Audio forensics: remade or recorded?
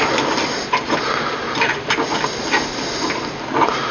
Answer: recorded